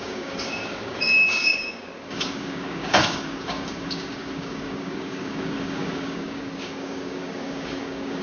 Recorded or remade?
remade